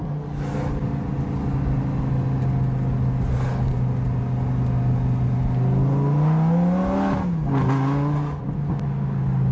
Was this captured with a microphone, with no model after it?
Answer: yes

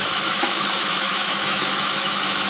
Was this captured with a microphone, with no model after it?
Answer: no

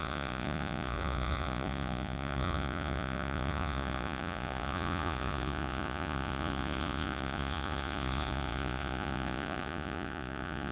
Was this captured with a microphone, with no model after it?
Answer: no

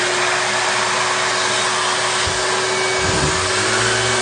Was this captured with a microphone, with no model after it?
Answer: yes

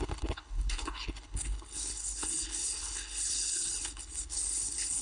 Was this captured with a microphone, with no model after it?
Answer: no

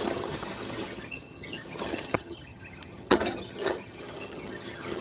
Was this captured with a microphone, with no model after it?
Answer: no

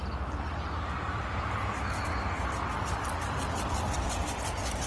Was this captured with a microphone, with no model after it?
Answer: yes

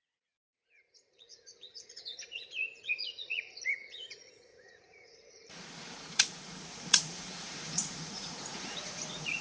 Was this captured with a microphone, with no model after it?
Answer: no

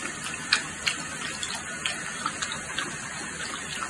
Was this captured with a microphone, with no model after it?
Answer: yes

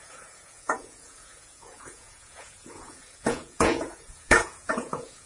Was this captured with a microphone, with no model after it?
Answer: no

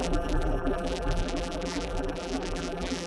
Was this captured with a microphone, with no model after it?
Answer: no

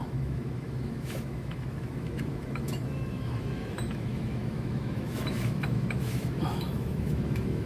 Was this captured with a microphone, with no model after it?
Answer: no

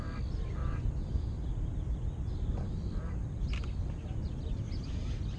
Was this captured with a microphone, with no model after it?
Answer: yes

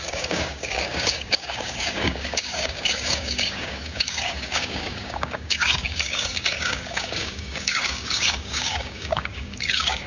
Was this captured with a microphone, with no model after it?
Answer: no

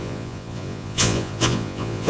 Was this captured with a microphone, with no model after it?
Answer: no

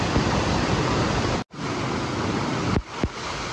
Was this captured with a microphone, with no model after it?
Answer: yes